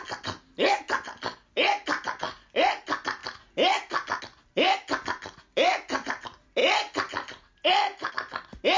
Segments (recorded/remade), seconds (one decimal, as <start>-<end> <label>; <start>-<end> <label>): 0.0-8.8 recorded